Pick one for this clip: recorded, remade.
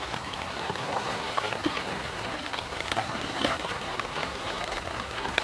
remade